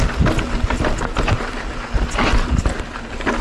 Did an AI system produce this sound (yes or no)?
no